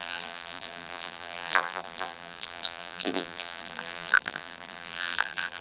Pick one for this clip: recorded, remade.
remade